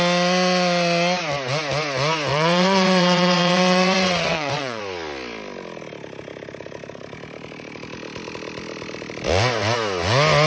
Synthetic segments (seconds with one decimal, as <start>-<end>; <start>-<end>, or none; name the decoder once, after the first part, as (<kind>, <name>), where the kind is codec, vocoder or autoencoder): 2.3-4.8 (vocoder, WaveNeXt)